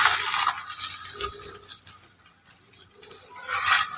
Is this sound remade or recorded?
recorded